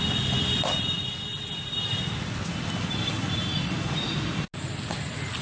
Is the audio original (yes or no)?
yes